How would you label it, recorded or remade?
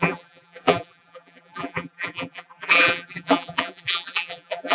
remade